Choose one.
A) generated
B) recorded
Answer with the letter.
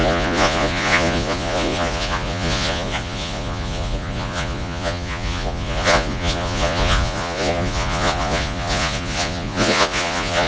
A